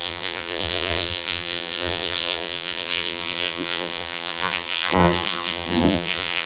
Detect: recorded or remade remade